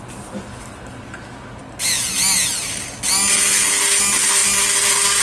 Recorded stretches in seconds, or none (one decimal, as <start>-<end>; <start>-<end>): 0.0-5.2